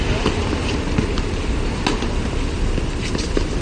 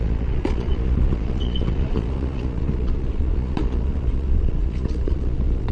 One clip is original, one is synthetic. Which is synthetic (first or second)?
second